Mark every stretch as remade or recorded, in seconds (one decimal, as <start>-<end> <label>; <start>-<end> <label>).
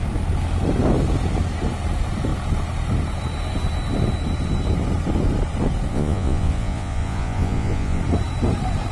0.0-5.9 recorded; 5.9-8.0 remade; 8.0-8.9 recorded